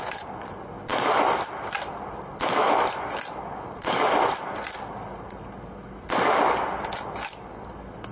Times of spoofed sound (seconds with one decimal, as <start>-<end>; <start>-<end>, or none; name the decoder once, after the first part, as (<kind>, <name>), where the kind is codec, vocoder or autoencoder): none